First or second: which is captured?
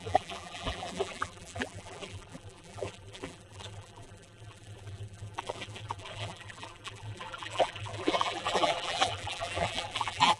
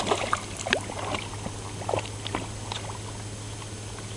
second